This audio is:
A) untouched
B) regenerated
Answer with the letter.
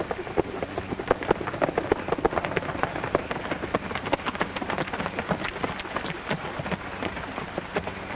A